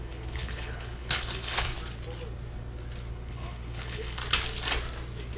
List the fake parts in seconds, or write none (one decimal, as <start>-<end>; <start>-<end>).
0.0-1.7; 3.1-4.2